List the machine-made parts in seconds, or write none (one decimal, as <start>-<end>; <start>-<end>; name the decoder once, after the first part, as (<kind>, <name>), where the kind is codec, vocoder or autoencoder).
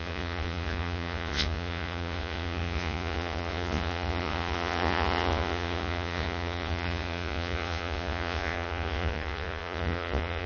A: 0.0-10.5 (vocoder, Vocos)